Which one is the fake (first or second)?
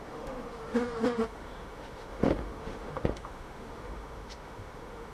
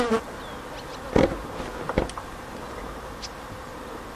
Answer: first